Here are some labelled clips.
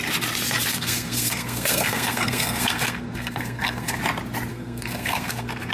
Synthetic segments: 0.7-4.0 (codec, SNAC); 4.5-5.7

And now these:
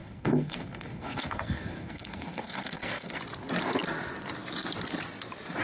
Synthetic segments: 0.0-3.2 (codec, SNAC)

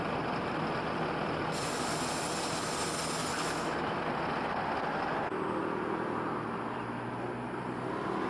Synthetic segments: none

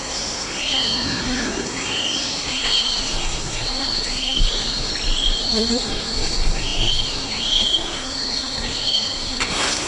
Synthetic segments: 0.0-4.9 (codec, SNAC); 5.4-9.9

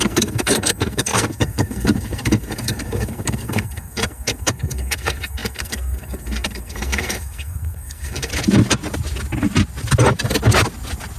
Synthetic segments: 0.0-8.3 (codec, SNAC)

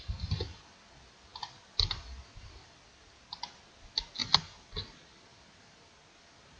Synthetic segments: none

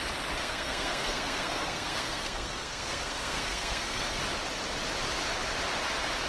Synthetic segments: 0.4-4.2 (codec, SNAC)